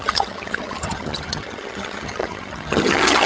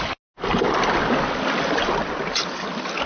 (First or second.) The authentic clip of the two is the second